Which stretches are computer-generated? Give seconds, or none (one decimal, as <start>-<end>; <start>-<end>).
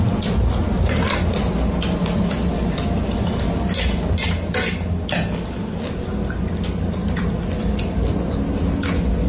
none